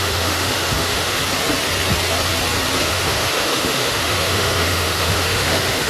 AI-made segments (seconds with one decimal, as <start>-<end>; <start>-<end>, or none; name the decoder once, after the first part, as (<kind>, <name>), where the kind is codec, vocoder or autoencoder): 0.0-1.2 (autoencoder, DAC-VAE); 2.8-5.9